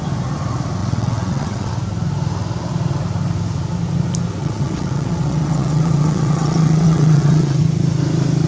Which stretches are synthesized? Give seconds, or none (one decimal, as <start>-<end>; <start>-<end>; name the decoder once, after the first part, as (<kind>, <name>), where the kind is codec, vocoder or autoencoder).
0.8-1.7 (vocoder, WaveNeXt); 4.4-7.6

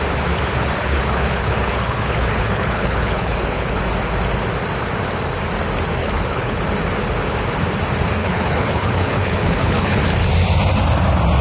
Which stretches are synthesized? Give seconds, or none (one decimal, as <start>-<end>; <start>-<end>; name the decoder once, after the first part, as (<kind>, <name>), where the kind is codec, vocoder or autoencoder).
0.8-3.8 (codec, HILCodec); 6.0-6.6; 8.2-10.0

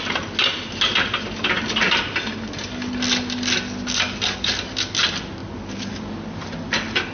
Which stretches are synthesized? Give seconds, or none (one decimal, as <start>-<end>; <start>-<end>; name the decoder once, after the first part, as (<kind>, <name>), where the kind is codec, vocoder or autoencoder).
none

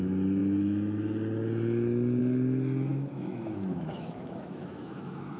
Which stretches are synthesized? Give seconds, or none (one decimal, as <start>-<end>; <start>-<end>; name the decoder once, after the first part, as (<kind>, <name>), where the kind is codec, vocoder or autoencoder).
2.9-5.4 (autoencoder, DAC-VAE)

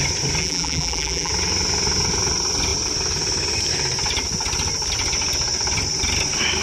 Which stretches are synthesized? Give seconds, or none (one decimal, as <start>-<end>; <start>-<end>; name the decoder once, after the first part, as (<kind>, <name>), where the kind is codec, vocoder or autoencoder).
0.4-1.3 (vocoder, BigVGAN v2)

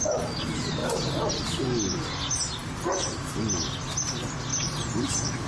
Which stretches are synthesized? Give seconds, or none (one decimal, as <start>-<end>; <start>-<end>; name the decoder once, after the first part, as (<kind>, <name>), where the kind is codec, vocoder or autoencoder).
2.6-3.1 (vocoder, BigVGAN v2); 4.5-5.5

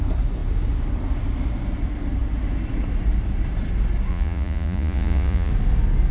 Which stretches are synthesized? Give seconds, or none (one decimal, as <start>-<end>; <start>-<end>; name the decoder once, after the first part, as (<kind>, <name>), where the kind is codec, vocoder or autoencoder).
4.1-5.5 (vocoder, Vocos)

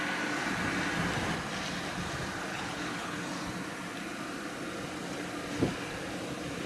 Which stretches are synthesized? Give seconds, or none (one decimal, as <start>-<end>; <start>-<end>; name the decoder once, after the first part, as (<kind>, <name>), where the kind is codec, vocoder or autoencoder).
2.5-3.2 (codec, HILCodec)